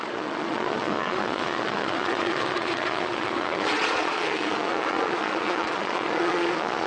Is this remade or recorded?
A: remade